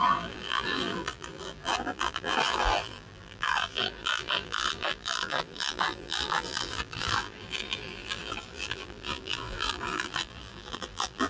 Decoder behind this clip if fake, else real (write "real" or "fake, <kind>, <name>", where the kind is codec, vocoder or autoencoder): fake, vocoder, BigVGAN v2